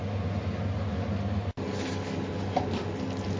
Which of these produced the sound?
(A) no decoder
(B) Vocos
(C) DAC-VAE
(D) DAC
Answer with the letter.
A